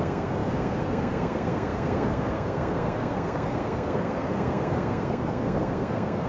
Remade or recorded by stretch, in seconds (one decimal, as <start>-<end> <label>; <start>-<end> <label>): 0.0-6.3 remade